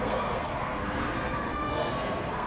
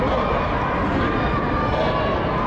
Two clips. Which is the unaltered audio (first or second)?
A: second